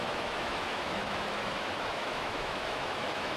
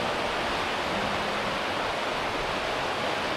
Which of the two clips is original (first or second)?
second